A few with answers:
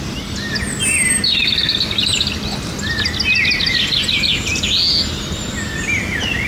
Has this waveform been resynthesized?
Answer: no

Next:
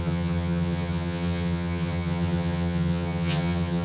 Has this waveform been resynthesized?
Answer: yes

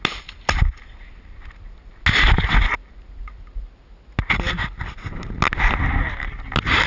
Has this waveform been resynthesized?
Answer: no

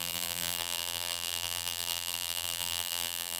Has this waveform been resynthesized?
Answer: yes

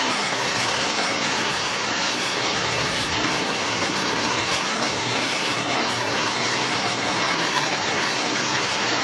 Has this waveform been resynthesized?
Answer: yes